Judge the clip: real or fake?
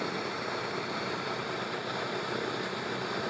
real